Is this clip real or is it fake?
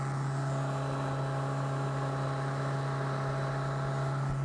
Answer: real